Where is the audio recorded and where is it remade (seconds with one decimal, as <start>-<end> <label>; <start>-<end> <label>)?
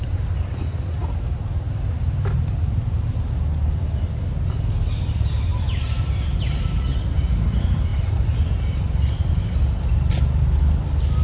0.0-1.0 recorded; 1.0-1.7 remade; 1.7-7.9 recorded; 7.9-9.6 remade; 9.6-11.2 recorded